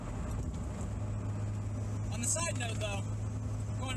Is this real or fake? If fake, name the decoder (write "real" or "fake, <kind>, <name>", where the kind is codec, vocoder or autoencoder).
real